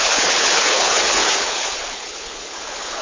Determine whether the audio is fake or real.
fake